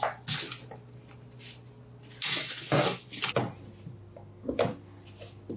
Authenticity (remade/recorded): recorded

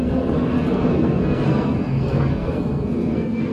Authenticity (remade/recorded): remade